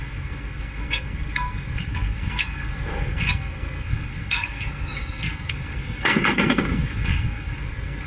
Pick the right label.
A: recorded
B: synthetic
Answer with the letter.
B